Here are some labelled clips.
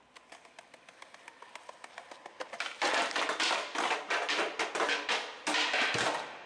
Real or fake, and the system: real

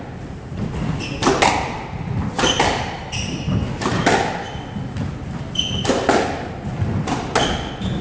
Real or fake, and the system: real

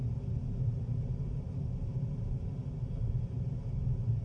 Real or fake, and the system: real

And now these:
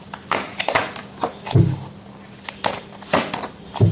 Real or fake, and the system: real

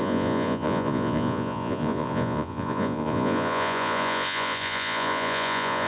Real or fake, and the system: fake, vocoder, Vocos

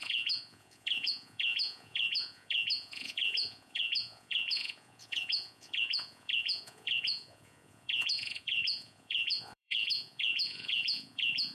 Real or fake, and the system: fake, vocoder, Vocos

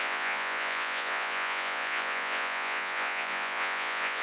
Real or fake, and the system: fake, vocoder, Vocos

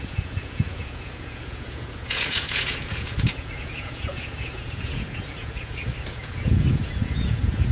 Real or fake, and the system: fake, vocoder, Vocos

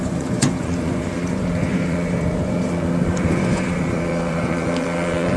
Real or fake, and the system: fake, vocoder, Vocos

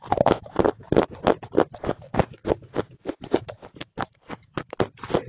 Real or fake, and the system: real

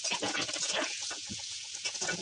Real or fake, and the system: fake, vocoder, Vocos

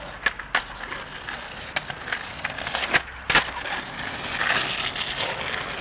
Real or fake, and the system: real